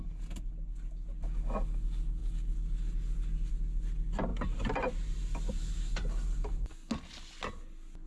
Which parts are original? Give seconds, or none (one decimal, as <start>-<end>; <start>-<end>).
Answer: 0.0-4.3; 6.7-8.1